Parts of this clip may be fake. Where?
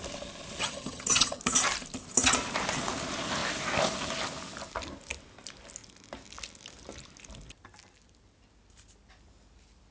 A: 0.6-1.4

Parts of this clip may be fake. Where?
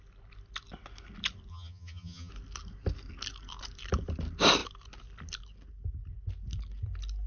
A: 1.5-2.3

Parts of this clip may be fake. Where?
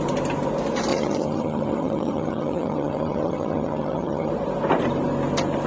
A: 0.9-4.3